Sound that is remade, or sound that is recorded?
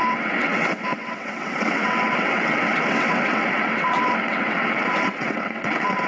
remade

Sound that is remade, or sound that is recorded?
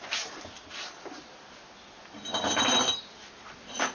recorded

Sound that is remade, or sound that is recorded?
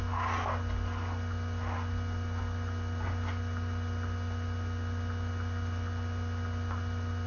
recorded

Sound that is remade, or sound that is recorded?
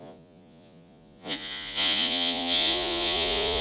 remade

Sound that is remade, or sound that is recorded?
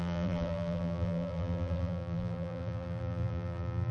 remade